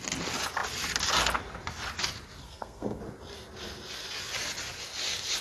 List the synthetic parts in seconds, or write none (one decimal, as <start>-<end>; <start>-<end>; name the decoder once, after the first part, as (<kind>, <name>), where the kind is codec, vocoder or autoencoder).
2.4-3.0 (codec, SNAC)